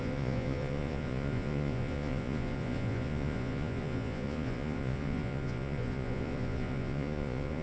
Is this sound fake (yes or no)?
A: yes